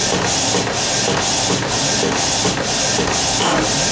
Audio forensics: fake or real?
real